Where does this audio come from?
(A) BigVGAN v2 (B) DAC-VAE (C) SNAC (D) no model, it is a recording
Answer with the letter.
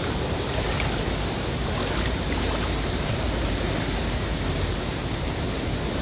A